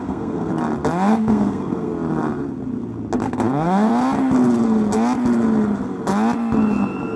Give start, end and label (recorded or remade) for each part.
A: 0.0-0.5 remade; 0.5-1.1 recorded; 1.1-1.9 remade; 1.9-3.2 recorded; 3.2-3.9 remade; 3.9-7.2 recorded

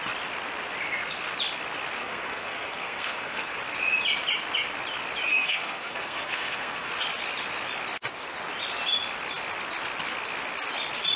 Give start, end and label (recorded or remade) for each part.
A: 0.0-2.0 recorded; 2.0-3.6 remade; 3.6-5.3 recorded; 5.3-6.9 remade; 6.9-11.2 recorded

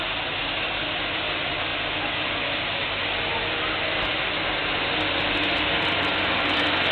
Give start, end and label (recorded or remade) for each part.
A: 0.0-6.9 recorded